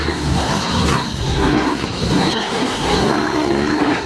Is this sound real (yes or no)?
no